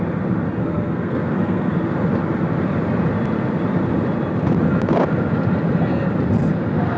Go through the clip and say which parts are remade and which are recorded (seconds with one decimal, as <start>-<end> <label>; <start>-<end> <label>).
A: 0.0-0.6 recorded; 0.6-1.7 remade; 1.7-7.0 recorded